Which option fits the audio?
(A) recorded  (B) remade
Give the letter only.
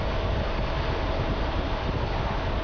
A